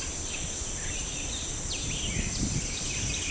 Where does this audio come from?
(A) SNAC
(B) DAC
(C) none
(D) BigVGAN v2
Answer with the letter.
C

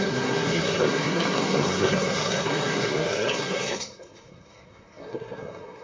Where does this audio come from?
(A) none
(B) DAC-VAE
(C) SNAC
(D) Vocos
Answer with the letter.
C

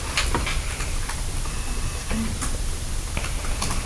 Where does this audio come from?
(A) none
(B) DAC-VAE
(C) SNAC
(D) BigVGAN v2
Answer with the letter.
A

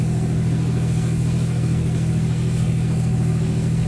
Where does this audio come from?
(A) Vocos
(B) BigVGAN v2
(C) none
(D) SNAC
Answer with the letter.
D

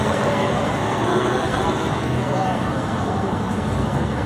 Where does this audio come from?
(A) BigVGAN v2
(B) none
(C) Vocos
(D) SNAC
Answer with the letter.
D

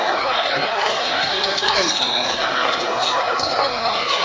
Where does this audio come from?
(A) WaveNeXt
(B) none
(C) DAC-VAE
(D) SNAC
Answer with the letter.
D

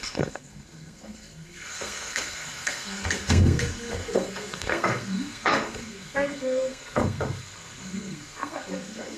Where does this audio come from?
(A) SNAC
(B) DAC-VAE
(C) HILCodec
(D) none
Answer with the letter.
A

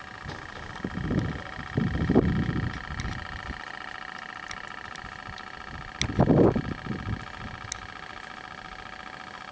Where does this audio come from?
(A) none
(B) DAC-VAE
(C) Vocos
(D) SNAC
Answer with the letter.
A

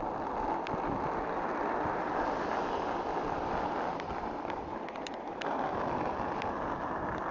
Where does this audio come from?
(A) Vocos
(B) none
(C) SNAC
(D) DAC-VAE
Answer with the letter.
B